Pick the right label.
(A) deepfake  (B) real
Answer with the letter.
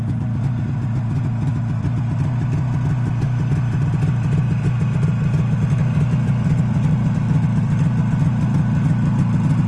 B